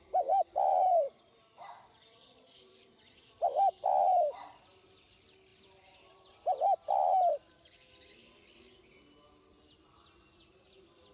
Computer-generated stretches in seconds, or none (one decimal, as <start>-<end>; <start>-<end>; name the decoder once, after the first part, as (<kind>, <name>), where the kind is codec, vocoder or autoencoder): 0.7-3.9 (vocoder, BigVGAN v2); 5.5-8.4